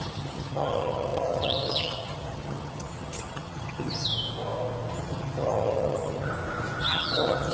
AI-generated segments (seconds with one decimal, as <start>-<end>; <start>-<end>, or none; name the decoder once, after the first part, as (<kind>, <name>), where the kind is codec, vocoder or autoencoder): 0.0-4.1 (vocoder, HiFi-GAN); 4.9-6.3; 6.8-7.5